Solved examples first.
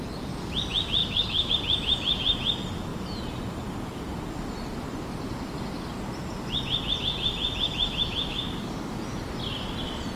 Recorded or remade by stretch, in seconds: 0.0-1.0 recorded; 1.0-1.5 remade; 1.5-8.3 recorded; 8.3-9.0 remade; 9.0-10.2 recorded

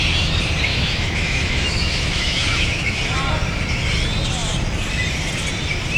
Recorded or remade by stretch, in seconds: 0.0-0.7 recorded; 0.7-3.0 remade; 3.0-6.0 recorded

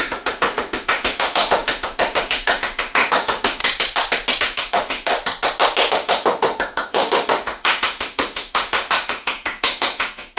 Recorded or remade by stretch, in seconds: 0.0-3.6 remade; 3.6-4.4 recorded; 4.4-5.1 remade; 5.1-5.9 recorded; 5.9-10.4 remade

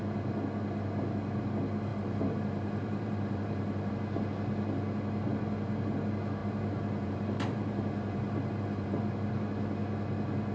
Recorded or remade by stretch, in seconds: 0.0-1.9 recorded; 1.9-3.9 remade; 3.9-6.4 recorded; 6.4-9.0 remade; 9.0-10.5 recorded

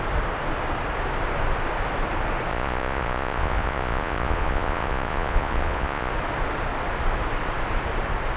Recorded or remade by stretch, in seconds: 0.0-2.5 recorded; 2.5-6.1 remade; 6.1-8.4 recorded